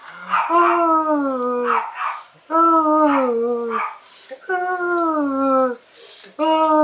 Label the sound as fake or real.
real